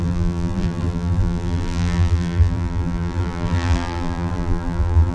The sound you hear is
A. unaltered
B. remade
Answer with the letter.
B